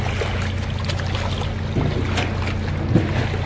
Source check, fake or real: real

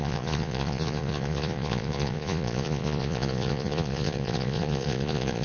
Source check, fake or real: fake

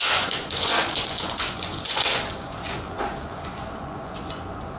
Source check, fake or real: fake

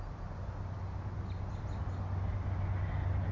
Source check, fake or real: real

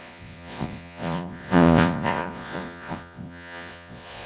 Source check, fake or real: fake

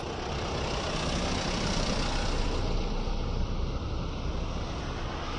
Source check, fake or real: real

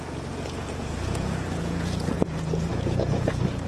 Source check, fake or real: fake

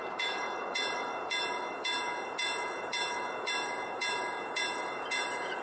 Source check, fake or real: fake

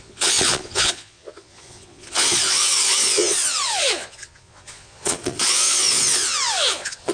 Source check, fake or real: fake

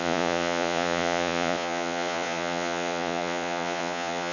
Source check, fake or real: fake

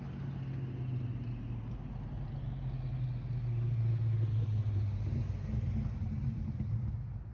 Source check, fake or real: real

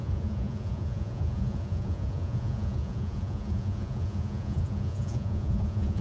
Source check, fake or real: fake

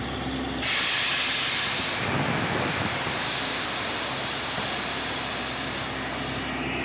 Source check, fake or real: real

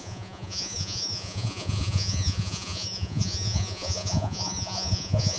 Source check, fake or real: fake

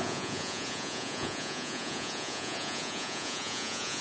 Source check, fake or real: fake